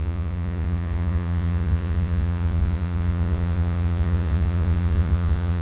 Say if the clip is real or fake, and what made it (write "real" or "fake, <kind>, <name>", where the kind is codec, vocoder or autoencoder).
fake, vocoder, Vocos